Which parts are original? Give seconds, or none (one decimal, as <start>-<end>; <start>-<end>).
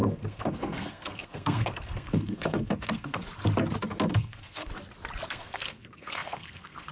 3.2-4.1; 4.7-5.3